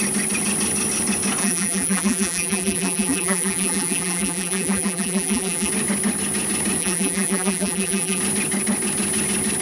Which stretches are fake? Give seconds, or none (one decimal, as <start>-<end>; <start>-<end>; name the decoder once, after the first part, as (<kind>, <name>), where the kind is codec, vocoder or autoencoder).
1.4-5.7 (vocoder, BigVGAN v2); 6.8-8.2